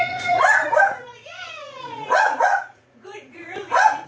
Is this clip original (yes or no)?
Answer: no